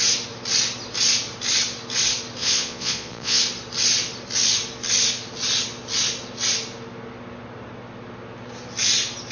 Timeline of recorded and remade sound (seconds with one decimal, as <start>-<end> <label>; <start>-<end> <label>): 0.0-2.4 recorded; 2.4-3.4 remade; 3.4-9.3 recorded

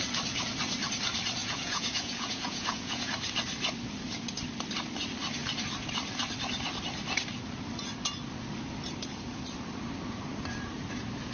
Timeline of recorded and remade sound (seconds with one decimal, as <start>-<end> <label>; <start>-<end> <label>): 0.0-1.4 recorded; 1.4-3.1 remade; 3.1-11.3 recorded

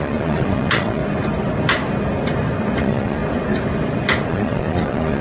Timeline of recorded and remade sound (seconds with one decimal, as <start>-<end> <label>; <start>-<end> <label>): 0.0-1.0 remade; 1.0-2.8 recorded; 2.8-3.2 remade; 3.2-4.3 recorded; 4.3-5.2 remade

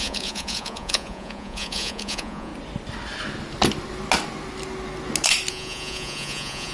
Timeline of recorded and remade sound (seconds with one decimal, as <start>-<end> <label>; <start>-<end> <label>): 0.0-2.5 remade; 2.5-5.5 recorded; 5.5-6.7 remade

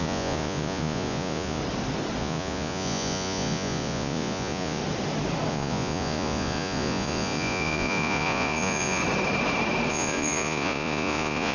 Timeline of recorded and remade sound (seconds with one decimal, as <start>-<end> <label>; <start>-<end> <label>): 0.0-1.6 remade; 1.6-2.2 recorded; 2.2-4.8 remade; 4.8-5.5 recorded; 5.5-9.0 remade; 9.0-9.9 recorded; 9.9-11.5 remade